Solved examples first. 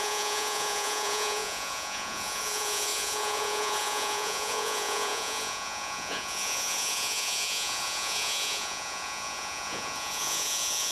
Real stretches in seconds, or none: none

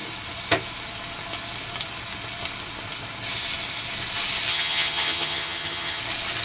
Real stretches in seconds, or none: 0.0-4.5; 6.0-6.4

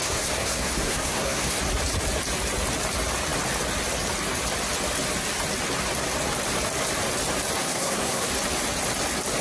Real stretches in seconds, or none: 1.6-7.6; 8.3-9.4

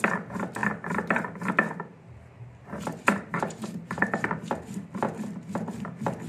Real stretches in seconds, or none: 0.0-0.6; 1.5-1.9; 4.4-6.3

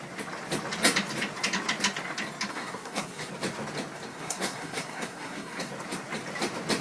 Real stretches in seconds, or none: 0.0-2.5; 3.3-4.1; 5.7-6.8